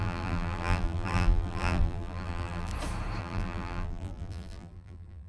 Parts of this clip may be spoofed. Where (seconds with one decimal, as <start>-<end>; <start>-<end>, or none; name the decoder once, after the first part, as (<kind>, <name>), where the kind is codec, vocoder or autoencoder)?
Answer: 0.0-2.7 (vocoder, BigVGAN v2); 3.2-5.3